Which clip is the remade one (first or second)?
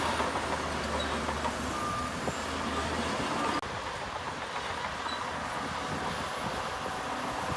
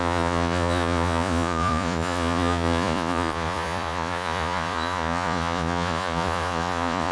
second